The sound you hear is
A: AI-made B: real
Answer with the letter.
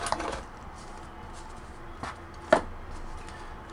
B